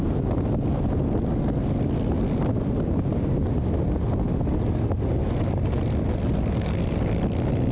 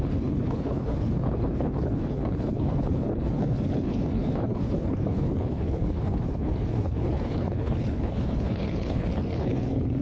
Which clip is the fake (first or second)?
second